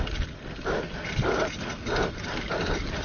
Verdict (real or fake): real